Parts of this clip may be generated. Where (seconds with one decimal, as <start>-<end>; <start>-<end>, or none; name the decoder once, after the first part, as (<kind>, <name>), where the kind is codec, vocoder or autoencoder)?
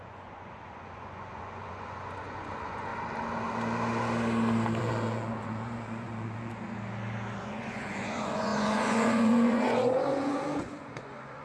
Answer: 0.0-2.9 (vocoder, Vocos); 4.8-6.5; 7.4-11.4